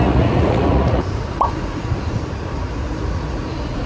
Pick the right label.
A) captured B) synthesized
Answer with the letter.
B